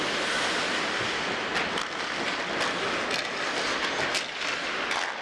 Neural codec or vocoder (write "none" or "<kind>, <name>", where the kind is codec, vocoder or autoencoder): none